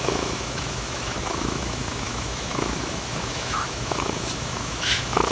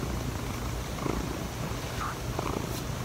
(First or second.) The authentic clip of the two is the second